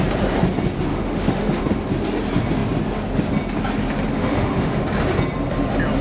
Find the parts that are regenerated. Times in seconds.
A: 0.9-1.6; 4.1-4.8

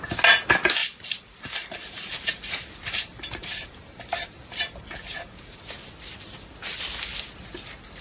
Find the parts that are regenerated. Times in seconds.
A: 0.8-5.6

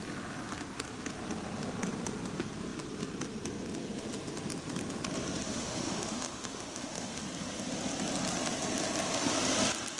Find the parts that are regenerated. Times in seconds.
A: 5.5-7.2

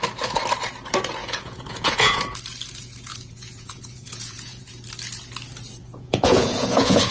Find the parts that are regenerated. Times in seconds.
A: 1.2-2.2; 3.1-4.7; 5.8-7.1